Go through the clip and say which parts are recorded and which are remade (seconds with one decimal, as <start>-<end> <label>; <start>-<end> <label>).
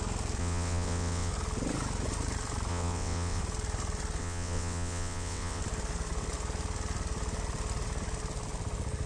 0.0-0.4 recorded; 0.4-1.3 remade; 1.3-2.7 recorded; 2.7-3.4 remade; 3.4-4.2 recorded; 4.2-5.6 remade; 5.6-9.1 recorded